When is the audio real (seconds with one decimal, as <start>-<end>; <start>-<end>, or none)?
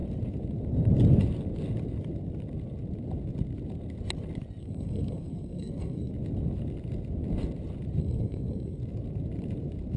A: 0.0-4.6; 6.1-8.0; 8.8-10.0